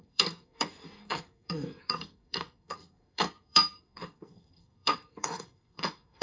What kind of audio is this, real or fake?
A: fake